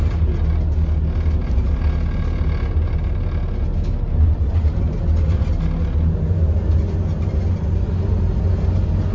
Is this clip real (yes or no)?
yes